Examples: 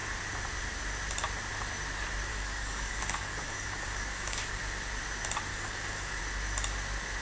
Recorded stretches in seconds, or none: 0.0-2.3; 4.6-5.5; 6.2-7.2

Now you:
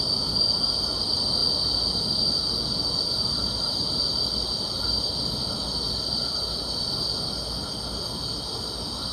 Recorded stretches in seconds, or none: 0.0-1.4; 1.9-9.1

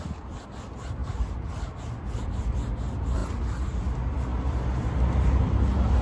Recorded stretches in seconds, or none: 0.0-6.0

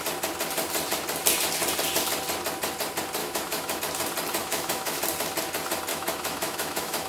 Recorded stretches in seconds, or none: 0.0-3.2; 3.8-4.4; 5.0-5.9